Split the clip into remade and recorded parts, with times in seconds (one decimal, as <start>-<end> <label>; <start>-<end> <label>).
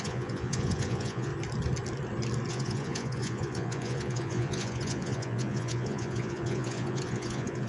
0.0-1.3 remade; 1.3-2.5 recorded; 2.5-7.7 remade